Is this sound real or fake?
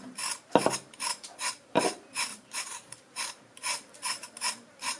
fake